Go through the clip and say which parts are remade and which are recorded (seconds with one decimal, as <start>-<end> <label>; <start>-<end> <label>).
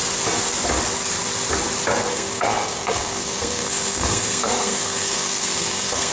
0.0-2.1 recorded; 2.1-6.1 remade